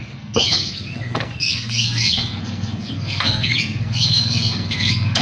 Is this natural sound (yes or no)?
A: no